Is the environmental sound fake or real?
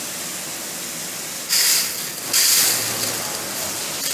real